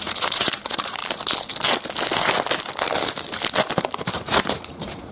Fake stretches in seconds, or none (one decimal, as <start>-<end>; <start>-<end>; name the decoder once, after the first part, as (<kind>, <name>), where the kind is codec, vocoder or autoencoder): 0.0-1.0 (vocoder, Vocos); 4.1-5.1